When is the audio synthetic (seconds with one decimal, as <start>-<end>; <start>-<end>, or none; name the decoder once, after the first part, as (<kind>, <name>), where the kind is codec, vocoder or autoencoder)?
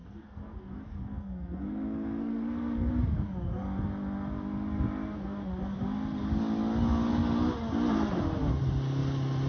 0.0-2.9 (codec, SNAC)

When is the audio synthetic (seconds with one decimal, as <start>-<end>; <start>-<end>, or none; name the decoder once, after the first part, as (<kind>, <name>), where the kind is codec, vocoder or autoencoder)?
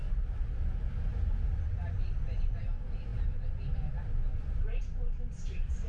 1.1-2.5 (vocoder, BigVGAN v2); 4.3-4.8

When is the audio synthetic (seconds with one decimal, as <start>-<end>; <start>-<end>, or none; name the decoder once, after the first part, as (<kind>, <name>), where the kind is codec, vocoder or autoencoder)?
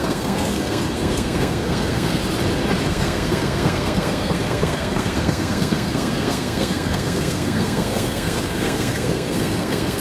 0.0-2.2 (codec, SNAC); 2.9-10.0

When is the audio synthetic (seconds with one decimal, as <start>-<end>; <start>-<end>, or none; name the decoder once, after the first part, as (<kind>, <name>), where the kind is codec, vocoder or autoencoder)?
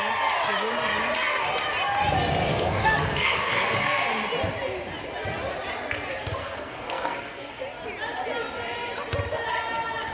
2.5-4.1 (codec, SNAC); 6.4-7.5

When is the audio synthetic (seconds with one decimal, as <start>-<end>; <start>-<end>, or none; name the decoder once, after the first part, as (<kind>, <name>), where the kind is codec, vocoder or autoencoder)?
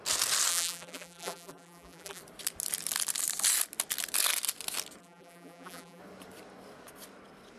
0.5-2.2 (vocoder, BigVGAN v2); 5.0-6.0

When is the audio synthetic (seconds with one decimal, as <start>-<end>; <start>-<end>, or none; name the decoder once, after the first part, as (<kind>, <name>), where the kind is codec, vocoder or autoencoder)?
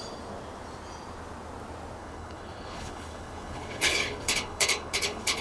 2.0-5.4 (codec, HILCodec)